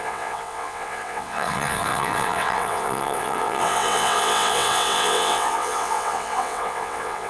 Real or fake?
fake